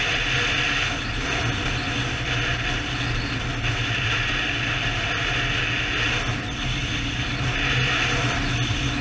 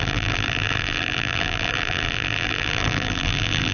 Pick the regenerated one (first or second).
second